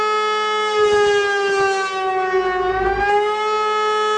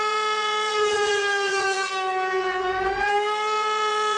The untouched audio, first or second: first